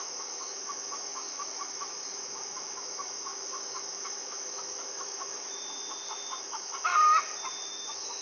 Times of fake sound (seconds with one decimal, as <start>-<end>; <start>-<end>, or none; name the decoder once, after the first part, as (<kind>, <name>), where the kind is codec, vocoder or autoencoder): 0.0-6.9 (autoencoder, DAC-VAE); 7.5-8.2